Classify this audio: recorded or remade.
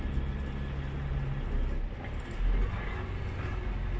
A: recorded